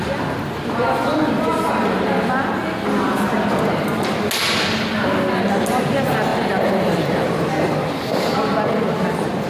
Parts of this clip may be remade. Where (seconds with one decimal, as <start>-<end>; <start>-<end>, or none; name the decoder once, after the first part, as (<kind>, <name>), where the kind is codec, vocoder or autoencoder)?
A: none